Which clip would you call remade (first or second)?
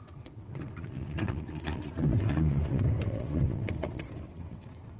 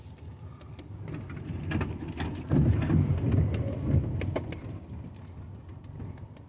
first